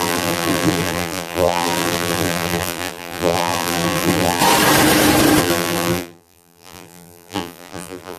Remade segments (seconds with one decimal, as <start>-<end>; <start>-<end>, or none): 0.0-4.4; 5.4-8.2